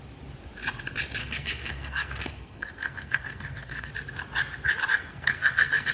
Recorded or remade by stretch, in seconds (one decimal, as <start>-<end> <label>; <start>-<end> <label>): 0.0-1.2 recorded; 1.2-3.9 remade; 3.9-4.9 recorded; 4.9-5.9 remade